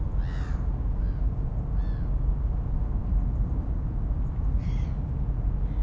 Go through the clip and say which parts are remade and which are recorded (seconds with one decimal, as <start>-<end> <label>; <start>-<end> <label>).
0.0-3.0 recorded; 3.0-4.9 remade; 4.9-5.8 recorded